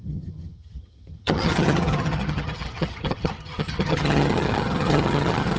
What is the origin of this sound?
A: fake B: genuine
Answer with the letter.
A